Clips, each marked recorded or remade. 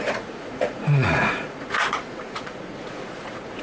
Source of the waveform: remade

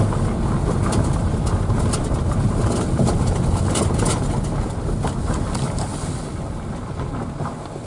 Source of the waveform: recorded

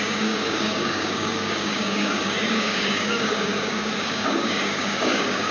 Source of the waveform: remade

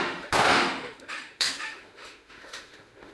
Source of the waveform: remade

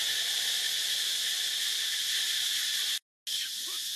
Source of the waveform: recorded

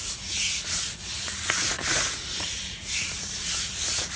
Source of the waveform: remade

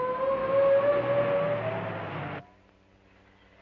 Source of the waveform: recorded